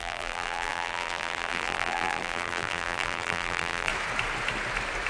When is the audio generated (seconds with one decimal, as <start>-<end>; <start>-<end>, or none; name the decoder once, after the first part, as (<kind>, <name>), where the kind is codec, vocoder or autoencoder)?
0.0-3.9 (vocoder, BigVGAN v2)